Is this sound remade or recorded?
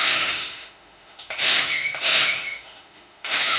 remade